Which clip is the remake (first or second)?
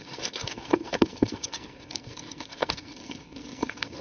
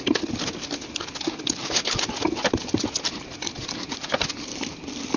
first